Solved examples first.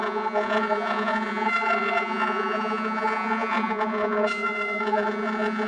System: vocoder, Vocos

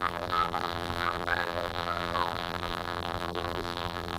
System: vocoder, BigVGAN v2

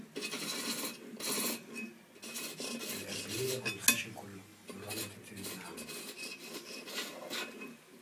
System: none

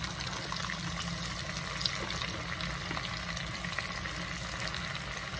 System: none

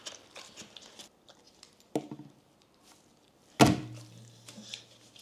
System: none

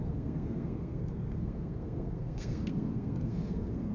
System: codec, SNAC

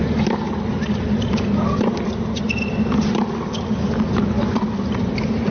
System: none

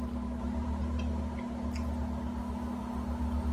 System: none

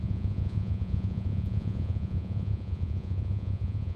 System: vocoder, Vocos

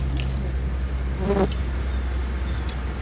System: none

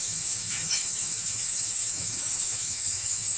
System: autoencoder, DAC-VAE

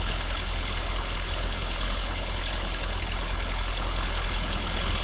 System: codec, HILCodec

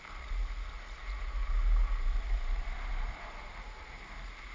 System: none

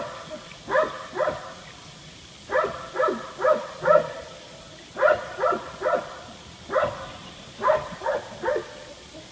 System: none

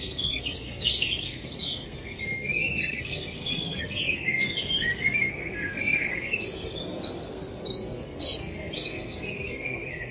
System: codec, SNAC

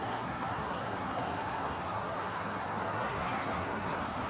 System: codec, SNAC